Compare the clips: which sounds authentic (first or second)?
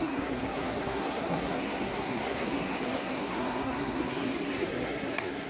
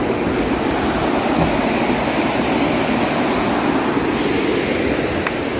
second